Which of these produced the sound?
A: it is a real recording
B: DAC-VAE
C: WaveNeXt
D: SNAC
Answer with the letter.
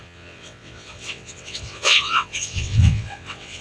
C